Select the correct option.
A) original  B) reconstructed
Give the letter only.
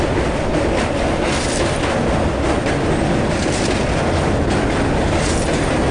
A